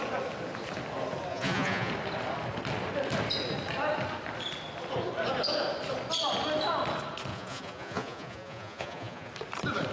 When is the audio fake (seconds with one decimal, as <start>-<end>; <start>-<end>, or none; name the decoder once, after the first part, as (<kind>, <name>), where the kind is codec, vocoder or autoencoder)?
1.3-1.9 (vocoder, Vocos); 7.3-9.3